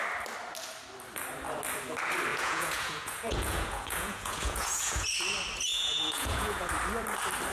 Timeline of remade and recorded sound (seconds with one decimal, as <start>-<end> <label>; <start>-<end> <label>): 0.0-2.3 recorded; 2.3-5.1 remade; 5.1-5.7 recorded; 5.7-6.7 remade; 6.7-7.5 recorded